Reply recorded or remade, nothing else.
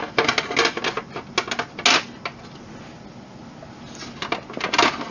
recorded